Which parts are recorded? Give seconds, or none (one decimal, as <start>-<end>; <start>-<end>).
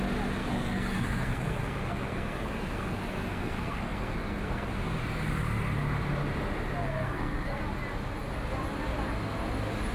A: 0.0-0.4; 4.7-6.8; 7.6-9.9